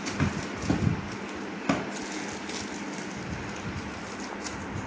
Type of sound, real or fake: real